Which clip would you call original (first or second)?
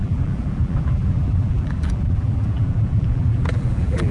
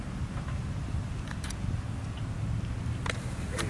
second